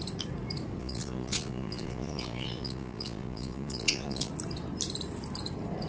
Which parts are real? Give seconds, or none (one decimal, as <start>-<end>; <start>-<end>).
0.0-0.8; 4.3-5.9

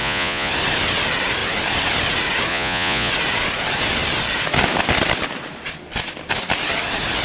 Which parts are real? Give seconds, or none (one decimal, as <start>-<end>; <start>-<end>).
0.5-2.5; 3.1-7.2

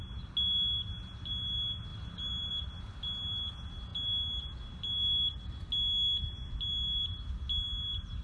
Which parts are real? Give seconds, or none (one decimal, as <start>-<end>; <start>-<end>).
0.0-1.9; 2.5-8.2

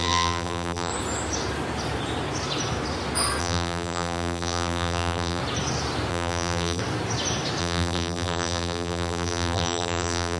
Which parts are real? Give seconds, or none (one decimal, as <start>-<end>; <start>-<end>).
0.9-3.4; 5.4-6.1; 6.8-7.6